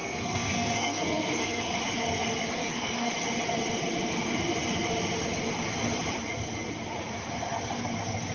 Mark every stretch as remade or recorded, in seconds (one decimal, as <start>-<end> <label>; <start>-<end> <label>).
0.0-1.8 remade; 1.8-2.6 recorded; 2.6-3.1 remade; 3.1-8.3 recorded